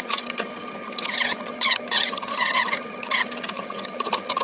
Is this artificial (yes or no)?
yes